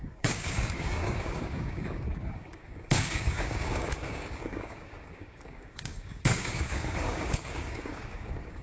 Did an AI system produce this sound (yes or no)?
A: yes